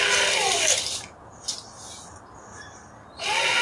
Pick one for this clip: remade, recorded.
recorded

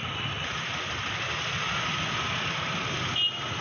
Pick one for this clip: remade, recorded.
recorded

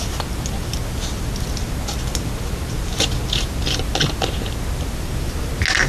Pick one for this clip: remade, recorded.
recorded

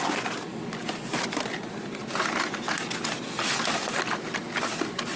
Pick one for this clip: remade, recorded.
recorded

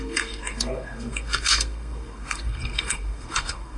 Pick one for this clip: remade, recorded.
remade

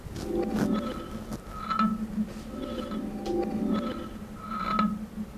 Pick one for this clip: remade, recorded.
recorded